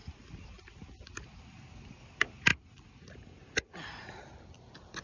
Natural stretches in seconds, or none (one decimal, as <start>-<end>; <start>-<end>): 0.0-5.0

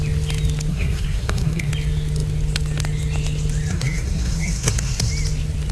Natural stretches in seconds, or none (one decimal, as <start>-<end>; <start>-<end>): 0.0-0.7; 1.7-3.7; 5.1-5.7

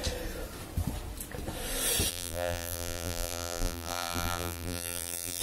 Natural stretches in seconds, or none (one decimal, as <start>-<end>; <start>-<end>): 0.0-2.1

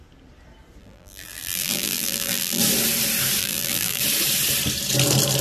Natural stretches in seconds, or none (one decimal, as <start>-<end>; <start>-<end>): 0.0-0.8; 2.6-3.4; 4.0-5.4

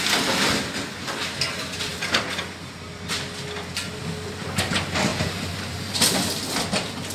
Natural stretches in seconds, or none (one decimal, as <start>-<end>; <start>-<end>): 0.0-5.1; 5.9-7.1

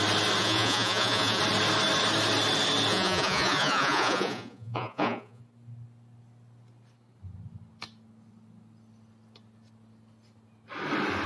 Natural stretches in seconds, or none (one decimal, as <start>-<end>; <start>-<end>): 0.0-0.4; 1.4-2.9; 5.4-11.3

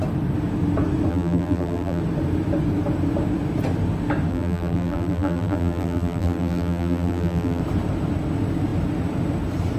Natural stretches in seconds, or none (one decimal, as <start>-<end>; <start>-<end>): 0.0-1.1; 2.0-4.3; 7.6-9.8